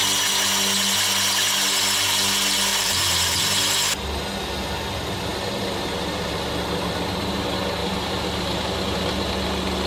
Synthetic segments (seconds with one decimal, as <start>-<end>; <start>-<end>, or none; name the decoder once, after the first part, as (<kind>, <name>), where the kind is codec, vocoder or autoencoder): 2.7-3.6 (vocoder, BigVGAN v2); 5.3-6.5; 7.8-9.3